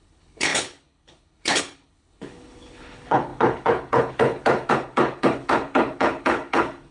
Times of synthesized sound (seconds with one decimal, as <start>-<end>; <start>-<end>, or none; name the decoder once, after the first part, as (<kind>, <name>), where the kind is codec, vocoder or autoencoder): 0.0-6.9 (codec, HILCodec)

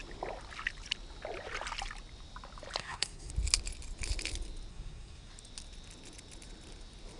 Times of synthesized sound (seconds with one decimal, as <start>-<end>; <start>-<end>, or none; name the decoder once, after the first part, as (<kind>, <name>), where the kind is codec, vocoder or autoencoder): 2.8-3.3 (codec, SNAC); 4.7-5.3

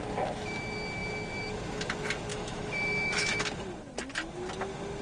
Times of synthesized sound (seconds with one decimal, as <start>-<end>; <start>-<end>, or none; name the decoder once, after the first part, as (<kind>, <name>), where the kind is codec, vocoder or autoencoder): 2.3-3.4 (autoencoder, DAC-VAE)

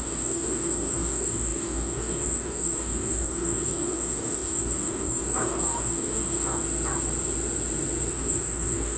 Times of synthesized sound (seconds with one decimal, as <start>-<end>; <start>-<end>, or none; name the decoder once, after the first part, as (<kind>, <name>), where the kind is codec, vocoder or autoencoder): 0.0-6.6 (codec, DAC); 8.1-9.0

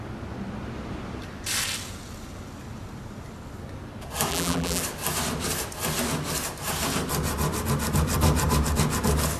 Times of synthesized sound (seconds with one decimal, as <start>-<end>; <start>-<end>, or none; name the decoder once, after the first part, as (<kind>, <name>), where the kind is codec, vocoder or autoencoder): 4.3-4.8 (vocoder, BigVGAN v2)

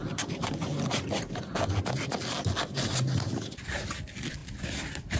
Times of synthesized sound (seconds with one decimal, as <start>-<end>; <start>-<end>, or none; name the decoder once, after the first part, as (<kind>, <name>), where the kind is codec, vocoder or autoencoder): none

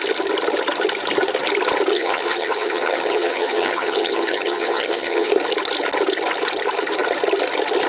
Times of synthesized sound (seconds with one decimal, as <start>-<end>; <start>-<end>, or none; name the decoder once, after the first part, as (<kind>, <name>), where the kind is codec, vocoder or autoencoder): 1.9-5.3 (vocoder, HiFi-GAN)

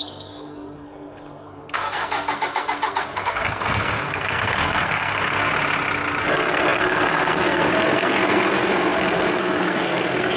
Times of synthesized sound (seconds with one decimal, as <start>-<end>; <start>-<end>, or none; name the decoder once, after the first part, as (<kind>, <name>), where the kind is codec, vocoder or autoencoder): 0.0-5.5 (codec, SNAC); 6.2-10.4